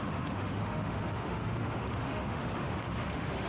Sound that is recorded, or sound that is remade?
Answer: remade